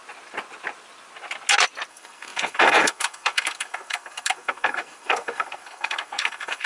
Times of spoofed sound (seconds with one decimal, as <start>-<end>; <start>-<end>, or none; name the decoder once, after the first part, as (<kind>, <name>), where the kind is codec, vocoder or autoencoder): 1.9-6.7 (codec, SNAC)